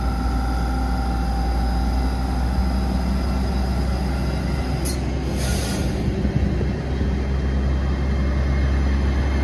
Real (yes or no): yes